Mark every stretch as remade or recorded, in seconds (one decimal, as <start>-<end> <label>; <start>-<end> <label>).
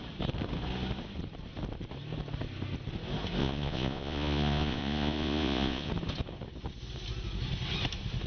0.0-3.4 recorded; 3.4-5.9 remade; 5.9-8.3 recorded